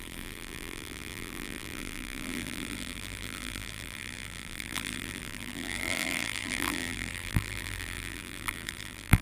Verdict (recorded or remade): remade